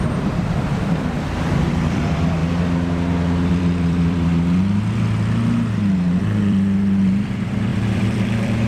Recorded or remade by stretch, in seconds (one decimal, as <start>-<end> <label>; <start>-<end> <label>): 0.0-2.4 remade; 2.4-3.5 recorded; 3.5-4.3 remade; 4.3-6.2 recorded; 6.2-8.7 remade